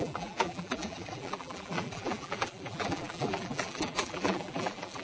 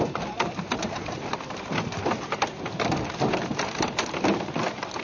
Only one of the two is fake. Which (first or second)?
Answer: first